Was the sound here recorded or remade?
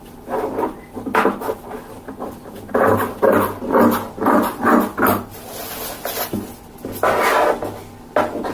recorded